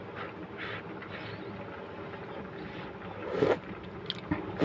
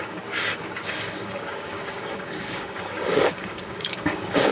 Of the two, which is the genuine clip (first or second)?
first